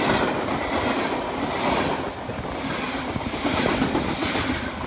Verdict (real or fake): real